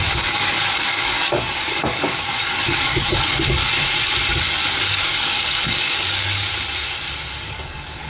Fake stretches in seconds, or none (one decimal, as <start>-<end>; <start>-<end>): 0.0-3.6; 4.3-6.5; 7.5-8.1